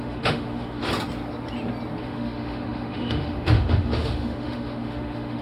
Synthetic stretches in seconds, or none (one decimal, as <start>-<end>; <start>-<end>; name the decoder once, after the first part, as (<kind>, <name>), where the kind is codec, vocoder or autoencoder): 0.0-0.8 (autoencoder, DAC-VAE); 2.0-5.4